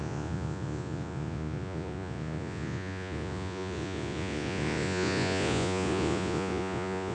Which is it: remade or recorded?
remade